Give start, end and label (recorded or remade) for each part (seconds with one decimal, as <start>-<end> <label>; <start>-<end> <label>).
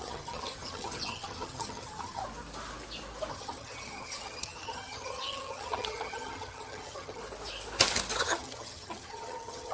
0.0-2.2 remade; 2.2-3.3 recorded; 3.3-7.2 remade; 7.2-8.2 recorded; 8.2-9.7 remade